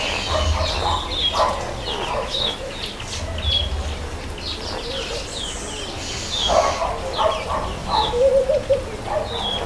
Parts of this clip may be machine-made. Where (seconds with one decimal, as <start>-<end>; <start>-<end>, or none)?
2.2-2.8; 7.8-8.3